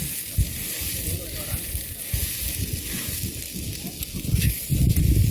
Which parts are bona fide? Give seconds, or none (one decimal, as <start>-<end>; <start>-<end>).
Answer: 0.0-5.3